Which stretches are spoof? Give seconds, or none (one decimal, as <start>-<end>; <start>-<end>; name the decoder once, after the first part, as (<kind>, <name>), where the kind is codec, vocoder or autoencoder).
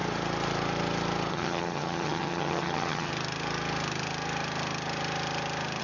1.3-3.1 (vocoder, HiFi-GAN)